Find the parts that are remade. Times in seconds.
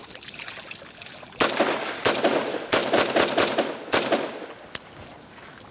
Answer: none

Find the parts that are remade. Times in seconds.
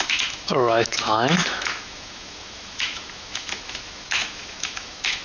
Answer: 0.0-5.2 (autoencoder, DAC-VAE)